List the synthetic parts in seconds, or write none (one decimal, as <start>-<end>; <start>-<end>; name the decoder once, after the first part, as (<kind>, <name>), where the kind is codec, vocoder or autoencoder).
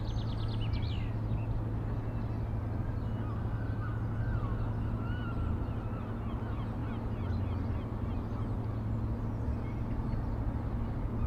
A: none